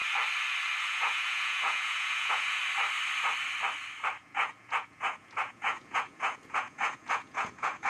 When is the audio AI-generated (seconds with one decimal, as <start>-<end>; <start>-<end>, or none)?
0.8-2.6; 4.2-7.9